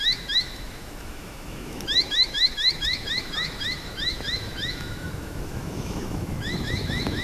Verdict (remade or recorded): remade